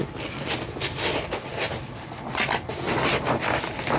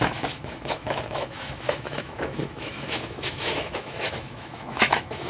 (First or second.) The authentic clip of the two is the first